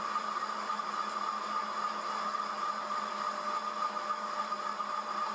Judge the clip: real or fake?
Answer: real